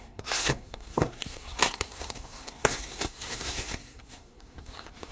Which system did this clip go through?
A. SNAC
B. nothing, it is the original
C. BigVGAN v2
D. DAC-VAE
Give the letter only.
A